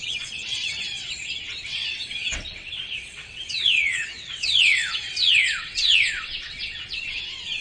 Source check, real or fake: fake